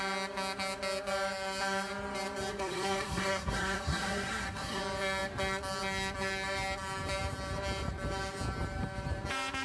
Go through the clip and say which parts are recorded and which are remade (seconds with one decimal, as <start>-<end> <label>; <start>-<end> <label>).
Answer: 0.0-2.5 recorded; 2.5-4.8 remade; 4.8-9.6 recorded